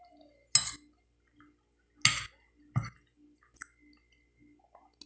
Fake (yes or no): no